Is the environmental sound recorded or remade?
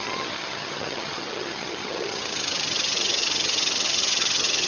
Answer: remade